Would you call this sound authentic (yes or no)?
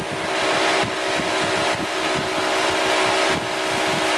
yes